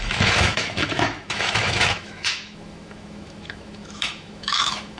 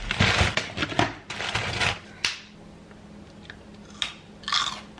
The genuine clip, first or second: second